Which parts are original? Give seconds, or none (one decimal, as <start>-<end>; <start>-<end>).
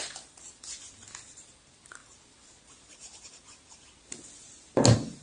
0.0-5.2